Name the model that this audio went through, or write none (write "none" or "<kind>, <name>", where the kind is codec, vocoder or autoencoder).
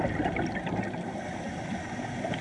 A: none